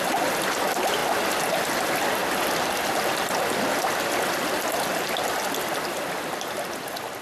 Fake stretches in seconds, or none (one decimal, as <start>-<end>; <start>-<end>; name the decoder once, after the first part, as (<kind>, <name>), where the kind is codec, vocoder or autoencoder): none